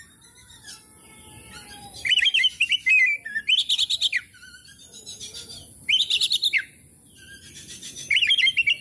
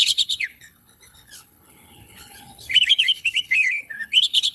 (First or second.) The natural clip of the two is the first